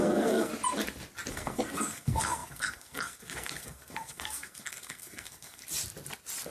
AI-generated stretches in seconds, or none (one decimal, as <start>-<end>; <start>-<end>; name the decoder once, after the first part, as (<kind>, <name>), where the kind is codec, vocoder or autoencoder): 0.0-0.5 (codec, SNAC); 1.3-5.6